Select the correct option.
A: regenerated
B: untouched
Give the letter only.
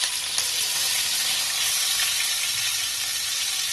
B